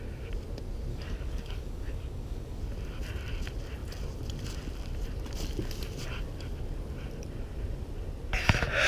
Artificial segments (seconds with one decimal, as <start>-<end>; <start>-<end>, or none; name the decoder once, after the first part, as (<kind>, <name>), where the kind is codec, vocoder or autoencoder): 0.9-2.6 (codec, DAC)